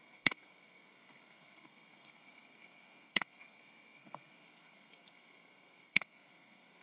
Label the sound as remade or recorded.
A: remade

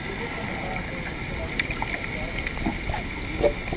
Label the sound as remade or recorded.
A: recorded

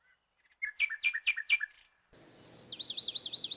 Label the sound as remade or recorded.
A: recorded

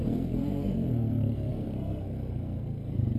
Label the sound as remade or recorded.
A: remade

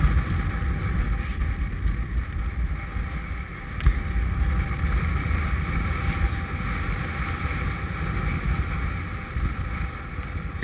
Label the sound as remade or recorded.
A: recorded